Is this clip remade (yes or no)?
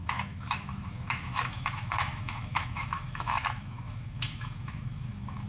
yes